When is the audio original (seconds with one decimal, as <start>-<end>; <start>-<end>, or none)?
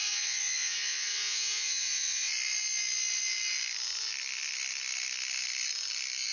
2.3-6.3